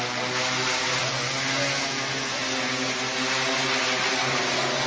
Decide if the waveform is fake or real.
real